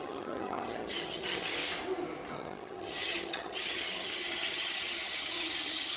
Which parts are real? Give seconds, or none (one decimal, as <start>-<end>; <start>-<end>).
1.6-2.3